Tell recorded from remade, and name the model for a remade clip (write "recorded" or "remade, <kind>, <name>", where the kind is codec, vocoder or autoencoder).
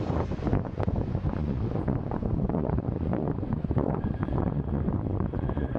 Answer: remade, vocoder, Vocos